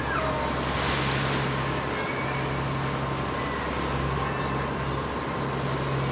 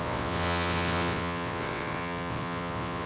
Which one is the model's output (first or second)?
second